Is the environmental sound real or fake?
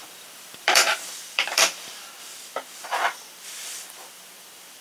fake